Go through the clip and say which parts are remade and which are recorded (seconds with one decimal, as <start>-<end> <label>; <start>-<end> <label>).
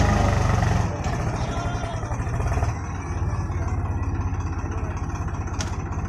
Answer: 0.0-6.1 recorded